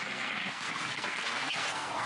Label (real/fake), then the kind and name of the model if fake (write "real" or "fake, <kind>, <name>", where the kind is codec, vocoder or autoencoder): fake, codec, SNAC